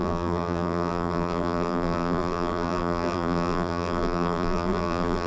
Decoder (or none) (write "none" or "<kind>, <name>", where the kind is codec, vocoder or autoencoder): vocoder, BigVGAN v2